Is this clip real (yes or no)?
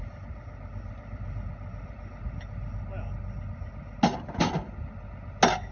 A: yes